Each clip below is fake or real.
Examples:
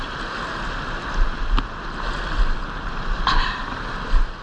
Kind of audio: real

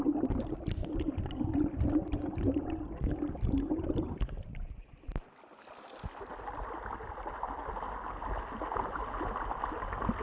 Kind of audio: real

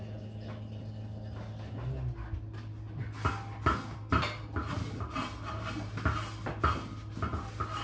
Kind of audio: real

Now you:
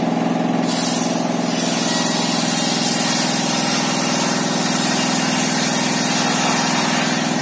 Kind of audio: real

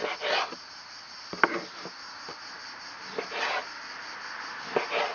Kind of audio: real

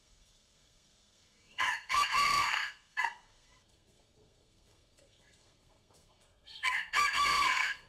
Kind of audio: fake